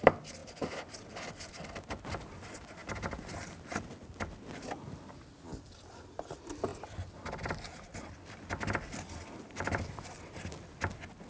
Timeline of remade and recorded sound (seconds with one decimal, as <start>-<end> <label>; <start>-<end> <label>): 0.0-11.3 recorded